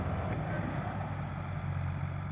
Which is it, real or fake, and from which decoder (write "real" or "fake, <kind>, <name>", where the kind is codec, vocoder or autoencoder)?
real